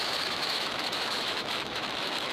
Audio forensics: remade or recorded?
remade